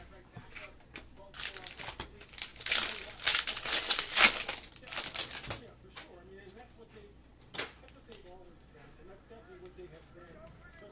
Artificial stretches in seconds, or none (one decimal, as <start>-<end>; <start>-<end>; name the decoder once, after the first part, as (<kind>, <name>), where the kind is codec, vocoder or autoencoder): none